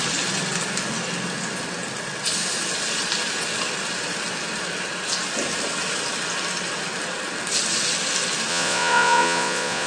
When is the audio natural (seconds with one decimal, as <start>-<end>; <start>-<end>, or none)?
0.0-8.5